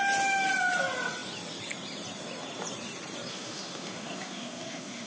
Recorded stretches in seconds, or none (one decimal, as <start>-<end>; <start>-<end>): 0.0-3.3